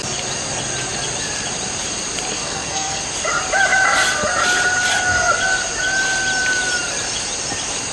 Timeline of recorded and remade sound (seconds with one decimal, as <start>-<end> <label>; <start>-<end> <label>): 0.0-2.3 recorded; 2.3-3.0 remade; 3.0-7.9 recorded